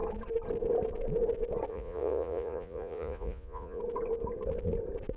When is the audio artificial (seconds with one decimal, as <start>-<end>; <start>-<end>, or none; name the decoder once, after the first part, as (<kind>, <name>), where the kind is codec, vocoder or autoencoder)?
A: 1.7-3.8 (vocoder, Vocos)